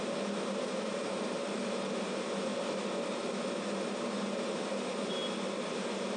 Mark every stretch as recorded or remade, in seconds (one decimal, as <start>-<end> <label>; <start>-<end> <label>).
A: 0.0-2.5 remade; 2.5-3.6 recorded; 3.6-5.2 remade; 5.2-6.2 recorded